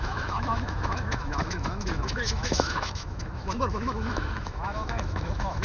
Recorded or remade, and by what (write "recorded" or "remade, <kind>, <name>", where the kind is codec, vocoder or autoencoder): remade, autoencoder, DAC-VAE